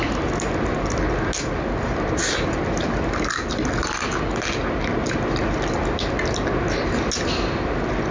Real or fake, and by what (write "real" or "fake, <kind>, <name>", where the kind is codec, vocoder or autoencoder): real